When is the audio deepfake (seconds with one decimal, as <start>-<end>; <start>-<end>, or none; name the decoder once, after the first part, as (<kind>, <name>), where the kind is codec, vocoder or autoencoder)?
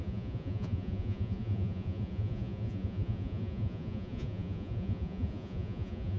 0.0-6.2 (vocoder, Vocos)